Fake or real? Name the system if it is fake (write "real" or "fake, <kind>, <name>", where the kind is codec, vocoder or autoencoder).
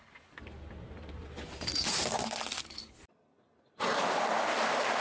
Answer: real